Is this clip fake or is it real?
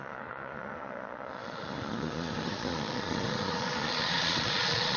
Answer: fake